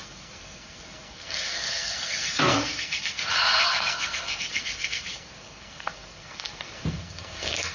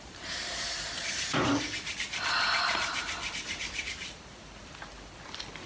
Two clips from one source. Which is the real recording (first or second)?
second